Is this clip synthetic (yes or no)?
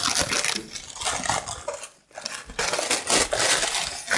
no